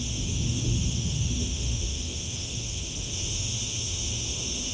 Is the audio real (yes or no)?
no